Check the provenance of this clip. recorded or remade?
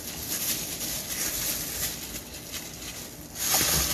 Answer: recorded